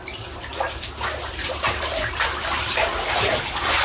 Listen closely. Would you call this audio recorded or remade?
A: recorded